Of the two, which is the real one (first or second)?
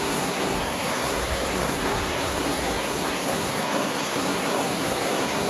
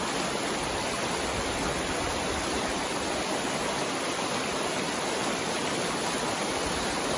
second